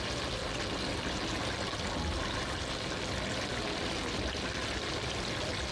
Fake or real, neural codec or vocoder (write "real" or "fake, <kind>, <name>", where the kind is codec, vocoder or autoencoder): real